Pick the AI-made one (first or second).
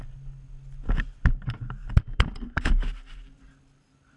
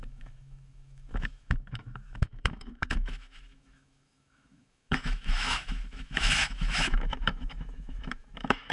second